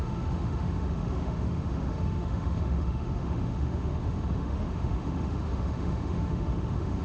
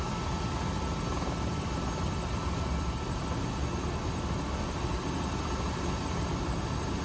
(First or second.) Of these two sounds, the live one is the second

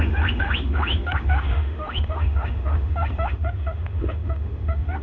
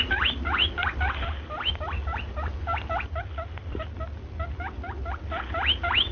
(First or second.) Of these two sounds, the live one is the second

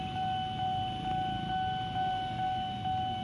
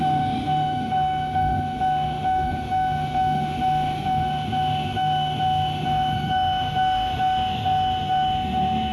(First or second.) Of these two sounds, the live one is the first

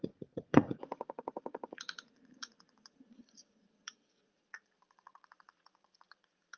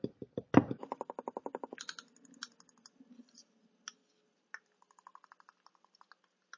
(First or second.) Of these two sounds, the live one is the second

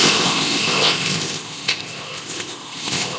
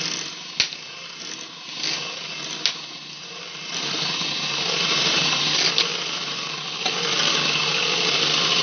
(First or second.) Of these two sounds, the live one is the second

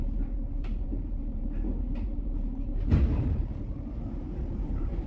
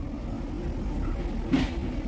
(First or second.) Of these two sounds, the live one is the second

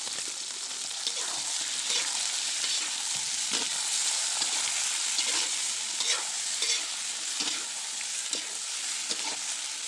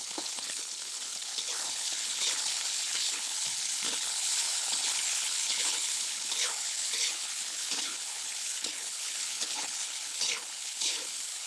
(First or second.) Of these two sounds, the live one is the first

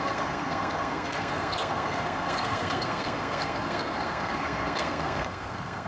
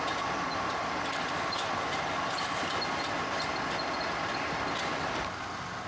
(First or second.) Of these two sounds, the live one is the second